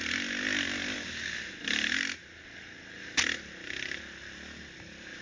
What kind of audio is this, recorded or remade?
recorded